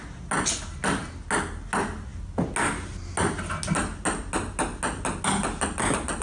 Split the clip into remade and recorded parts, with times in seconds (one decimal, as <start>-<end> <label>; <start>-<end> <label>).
0.0-6.2 recorded